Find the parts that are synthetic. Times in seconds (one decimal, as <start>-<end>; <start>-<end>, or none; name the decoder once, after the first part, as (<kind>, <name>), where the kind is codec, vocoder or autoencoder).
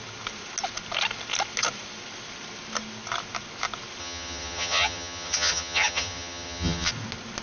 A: 4.0-6.9 (vocoder, HiFi-GAN)